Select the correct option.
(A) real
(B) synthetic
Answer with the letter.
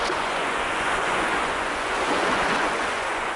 B